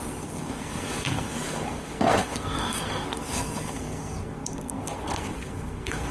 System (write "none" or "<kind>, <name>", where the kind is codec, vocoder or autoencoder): codec, SNAC